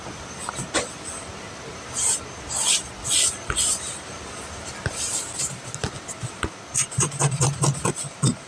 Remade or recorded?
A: recorded